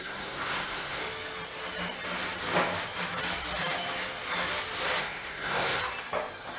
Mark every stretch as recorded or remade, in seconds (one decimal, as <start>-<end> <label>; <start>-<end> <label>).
0.0-1.0 remade; 1.0-5.0 recorded; 5.0-5.8 remade; 5.8-6.6 recorded